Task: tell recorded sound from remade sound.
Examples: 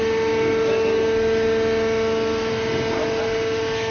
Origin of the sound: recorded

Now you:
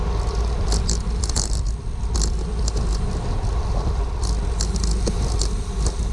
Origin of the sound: recorded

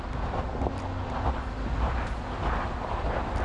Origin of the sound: recorded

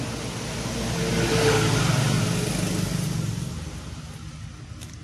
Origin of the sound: recorded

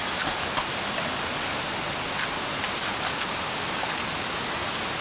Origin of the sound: recorded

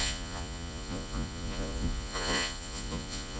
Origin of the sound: remade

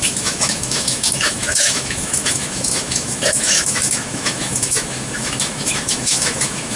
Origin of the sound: remade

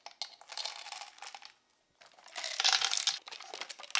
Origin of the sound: recorded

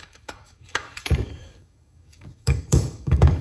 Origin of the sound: remade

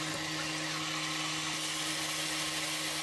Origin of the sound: recorded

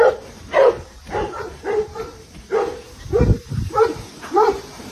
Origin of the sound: remade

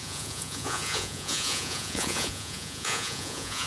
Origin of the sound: remade